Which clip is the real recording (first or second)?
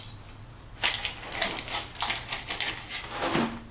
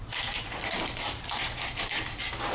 first